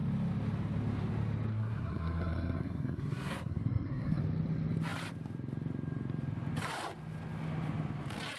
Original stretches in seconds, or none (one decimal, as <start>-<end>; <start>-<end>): 0.0-1.5; 4.2-8.4